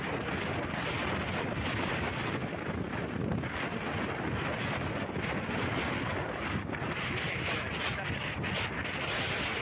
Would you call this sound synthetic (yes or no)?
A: no